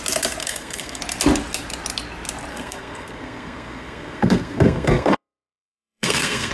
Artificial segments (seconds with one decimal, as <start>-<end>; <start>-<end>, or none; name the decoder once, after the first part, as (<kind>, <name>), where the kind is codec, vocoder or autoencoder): 0.4-1.0 (codec, SNAC); 2.5-6.5

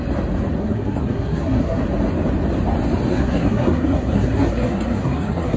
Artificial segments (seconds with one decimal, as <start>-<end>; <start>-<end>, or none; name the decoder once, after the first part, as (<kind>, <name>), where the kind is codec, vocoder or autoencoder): 0.6-1.8 (codec, SNAC); 3.1-5.6

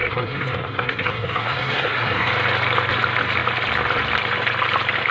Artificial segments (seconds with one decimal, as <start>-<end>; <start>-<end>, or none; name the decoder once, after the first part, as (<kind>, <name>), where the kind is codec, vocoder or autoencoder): 0.0-2.3 (codec, SNAC)

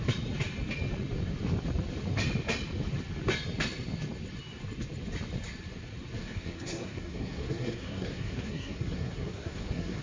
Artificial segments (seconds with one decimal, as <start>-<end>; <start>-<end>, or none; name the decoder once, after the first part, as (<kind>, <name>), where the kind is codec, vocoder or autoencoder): 6.2-10.0 (codec, SNAC)

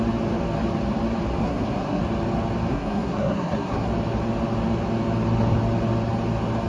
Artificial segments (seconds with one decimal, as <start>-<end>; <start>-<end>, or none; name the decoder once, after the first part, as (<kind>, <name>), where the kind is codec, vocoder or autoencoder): 1.4-2.0 (codec, SNAC); 2.7-3.9

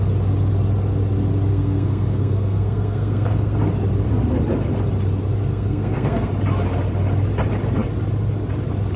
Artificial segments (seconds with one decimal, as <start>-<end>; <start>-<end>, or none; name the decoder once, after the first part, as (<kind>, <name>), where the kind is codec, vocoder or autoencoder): 1.5-3.6 (codec, SNAC); 5.5-6.3